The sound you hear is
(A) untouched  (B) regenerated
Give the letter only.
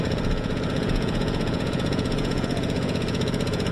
B